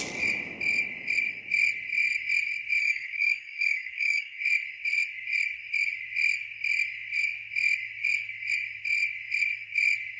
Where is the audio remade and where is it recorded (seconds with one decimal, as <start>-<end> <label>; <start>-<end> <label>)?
0.0-2.8 recorded; 2.8-4.4 remade; 4.4-10.2 recorded